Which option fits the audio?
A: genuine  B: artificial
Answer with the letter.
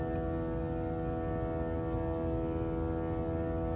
A